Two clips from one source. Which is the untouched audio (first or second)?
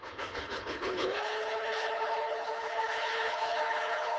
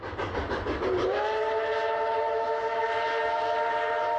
second